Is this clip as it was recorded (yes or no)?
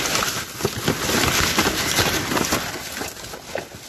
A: yes